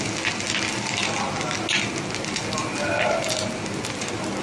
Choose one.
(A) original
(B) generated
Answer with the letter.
A